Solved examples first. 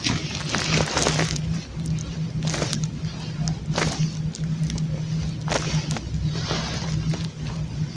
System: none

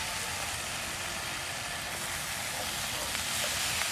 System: none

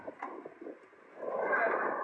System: none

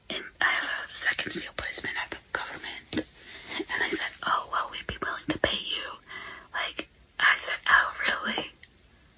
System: none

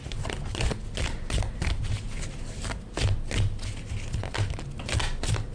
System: none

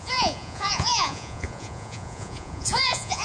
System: vocoder, Vocos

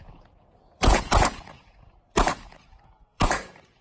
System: vocoder, Vocos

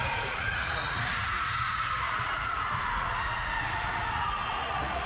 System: vocoder, Vocos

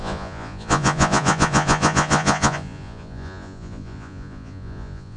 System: vocoder, Vocos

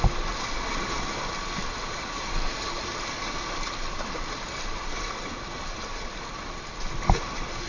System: none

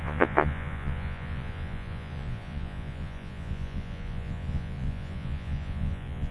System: vocoder, Vocos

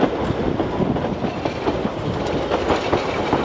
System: none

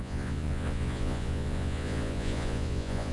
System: vocoder, Vocos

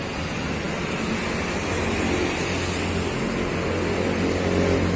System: none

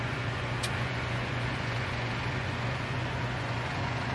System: vocoder, Vocos